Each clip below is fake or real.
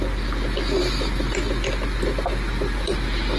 real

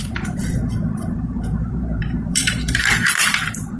fake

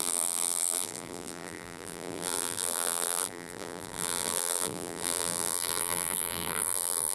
fake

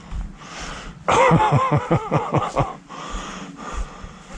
real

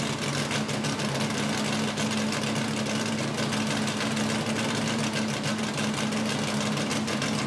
real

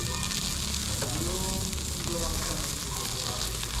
real